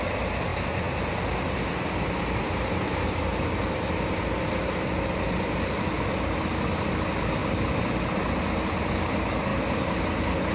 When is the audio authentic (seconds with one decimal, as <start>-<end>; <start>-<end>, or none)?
0.0-9.5; 10.0-10.5